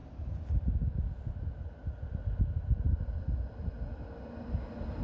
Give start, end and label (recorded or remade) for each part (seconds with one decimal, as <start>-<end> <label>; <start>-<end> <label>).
0.0-5.0 recorded

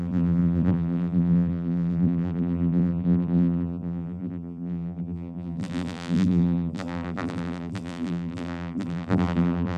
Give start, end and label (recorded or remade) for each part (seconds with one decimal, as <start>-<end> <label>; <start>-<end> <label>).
0.0-9.8 remade

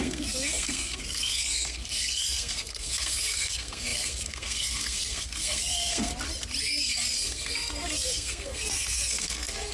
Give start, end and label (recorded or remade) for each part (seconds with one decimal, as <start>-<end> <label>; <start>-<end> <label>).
0.0-6.1 remade; 6.1-6.6 recorded; 6.6-9.7 remade